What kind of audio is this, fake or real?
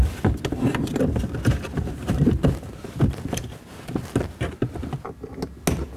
real